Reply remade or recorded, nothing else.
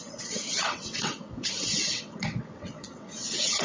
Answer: remade